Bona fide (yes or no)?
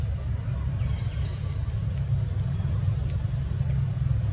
yes